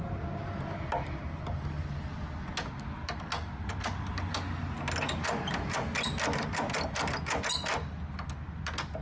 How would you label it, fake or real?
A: real